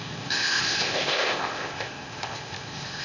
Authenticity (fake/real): fake